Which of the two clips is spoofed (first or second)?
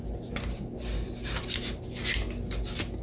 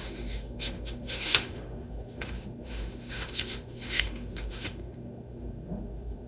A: second